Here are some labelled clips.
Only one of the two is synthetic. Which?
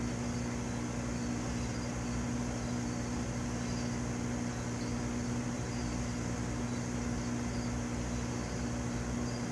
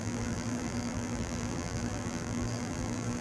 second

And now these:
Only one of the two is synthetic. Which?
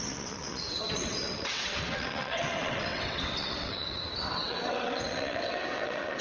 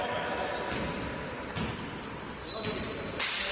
first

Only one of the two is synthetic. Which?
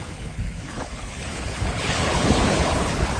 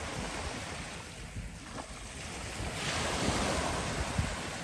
first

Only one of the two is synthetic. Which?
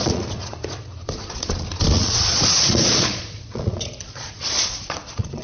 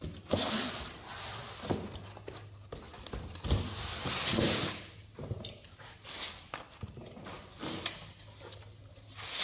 first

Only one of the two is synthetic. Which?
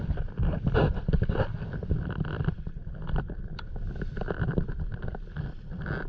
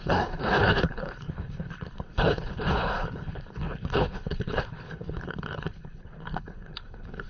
second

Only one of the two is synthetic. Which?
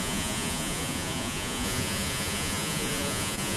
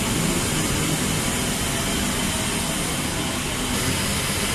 first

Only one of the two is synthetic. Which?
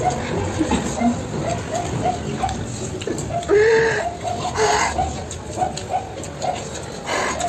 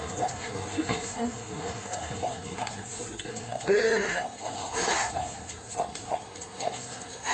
second